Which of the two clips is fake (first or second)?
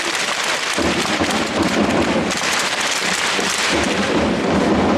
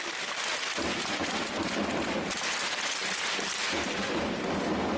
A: first